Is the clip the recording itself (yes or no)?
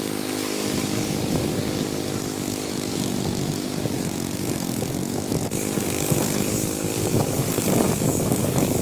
no